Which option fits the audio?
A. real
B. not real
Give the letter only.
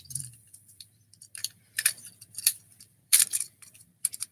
B